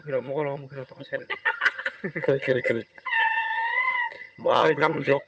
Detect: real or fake fake